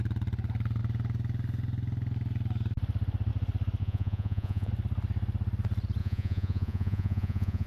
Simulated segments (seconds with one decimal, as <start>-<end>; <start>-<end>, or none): 3.8-4.7; 6.0-7.7